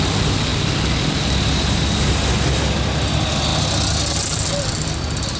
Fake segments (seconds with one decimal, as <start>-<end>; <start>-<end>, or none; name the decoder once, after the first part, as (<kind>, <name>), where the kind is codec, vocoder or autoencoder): none